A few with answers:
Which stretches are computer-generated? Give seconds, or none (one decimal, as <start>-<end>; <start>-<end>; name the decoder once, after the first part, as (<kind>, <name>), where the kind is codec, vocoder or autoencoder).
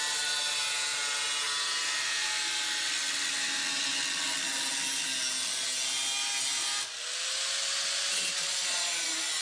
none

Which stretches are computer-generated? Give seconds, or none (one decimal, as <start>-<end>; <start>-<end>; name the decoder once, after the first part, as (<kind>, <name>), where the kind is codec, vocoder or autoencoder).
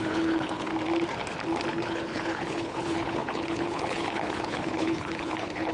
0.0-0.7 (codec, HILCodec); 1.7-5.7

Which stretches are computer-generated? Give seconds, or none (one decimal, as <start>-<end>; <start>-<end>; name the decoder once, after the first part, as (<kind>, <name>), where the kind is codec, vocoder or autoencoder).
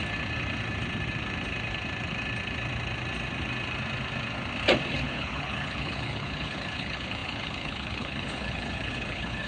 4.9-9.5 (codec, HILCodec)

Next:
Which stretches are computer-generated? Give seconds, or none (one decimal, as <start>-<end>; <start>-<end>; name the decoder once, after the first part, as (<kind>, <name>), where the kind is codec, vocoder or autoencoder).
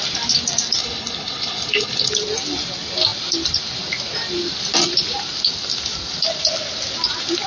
0.8-2.1 (codec, HILCodec)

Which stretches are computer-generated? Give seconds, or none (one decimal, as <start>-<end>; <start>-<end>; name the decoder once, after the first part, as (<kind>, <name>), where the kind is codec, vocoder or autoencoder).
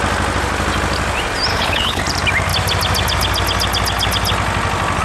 1.5-2.0 (codec, HILCodec)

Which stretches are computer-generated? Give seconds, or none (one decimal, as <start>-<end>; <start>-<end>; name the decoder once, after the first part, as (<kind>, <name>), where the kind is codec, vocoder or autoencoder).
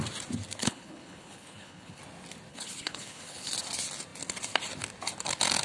0.6-2.0 (codec, HILCodec); 2.5-3.5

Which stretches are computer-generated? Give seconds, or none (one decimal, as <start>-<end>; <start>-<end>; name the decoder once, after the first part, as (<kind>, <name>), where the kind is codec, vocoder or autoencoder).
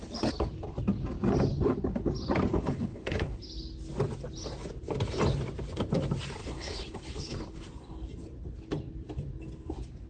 2.5-3.4 (codec, HILCodec); 6.4-7.7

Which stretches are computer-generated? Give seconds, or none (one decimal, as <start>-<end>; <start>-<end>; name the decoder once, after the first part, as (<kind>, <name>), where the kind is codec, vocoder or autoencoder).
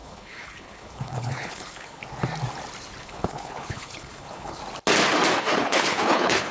0.0-2.0 (codec, HILCodec); 3.0-4.6; 5.4-6.5